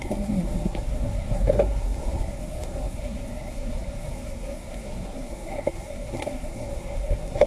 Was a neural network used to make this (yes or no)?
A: yes